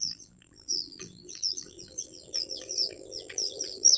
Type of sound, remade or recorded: remade